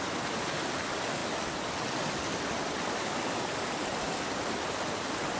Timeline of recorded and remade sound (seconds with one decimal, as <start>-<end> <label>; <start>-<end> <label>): 0.0-5.4 recorded